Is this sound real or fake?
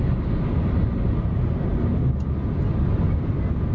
real